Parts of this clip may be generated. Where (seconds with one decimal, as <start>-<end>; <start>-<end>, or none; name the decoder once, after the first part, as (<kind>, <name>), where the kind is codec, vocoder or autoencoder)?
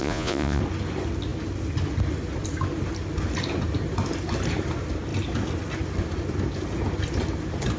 0.0-0.6 (vocoder, Vocos)